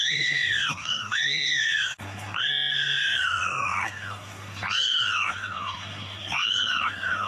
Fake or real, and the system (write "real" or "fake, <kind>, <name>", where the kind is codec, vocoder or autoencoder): fake, codec, SNAC